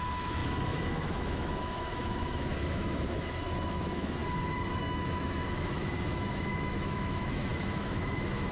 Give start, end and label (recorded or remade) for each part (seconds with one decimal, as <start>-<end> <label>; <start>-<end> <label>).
0.0-4.2 remade; 4.2-4.8 recorded; 4.8-8.5 remade